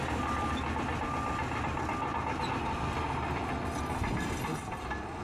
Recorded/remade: recorded